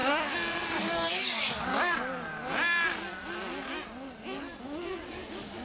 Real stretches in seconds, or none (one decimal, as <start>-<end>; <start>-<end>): 0.0-0.8; 1.7-4.6